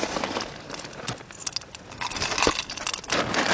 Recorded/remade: recorded